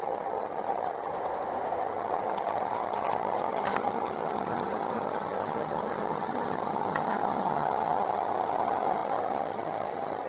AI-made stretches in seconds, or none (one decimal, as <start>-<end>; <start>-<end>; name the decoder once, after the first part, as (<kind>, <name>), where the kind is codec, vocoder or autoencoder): 0.0-1.1 (vocoder, HiFi-GAN); 1.8-10.3

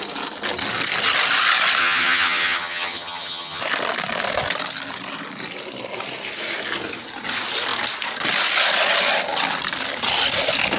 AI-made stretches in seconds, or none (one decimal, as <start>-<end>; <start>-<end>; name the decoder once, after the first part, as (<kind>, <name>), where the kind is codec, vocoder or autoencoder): 1.8-3.6 (vocoder, HiFi-GAN)